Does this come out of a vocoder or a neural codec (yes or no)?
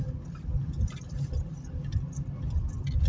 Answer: no